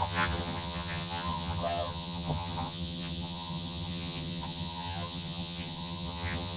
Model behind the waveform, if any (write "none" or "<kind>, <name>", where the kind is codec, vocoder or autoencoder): vocoder, HiFi-GAN